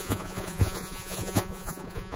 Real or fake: fake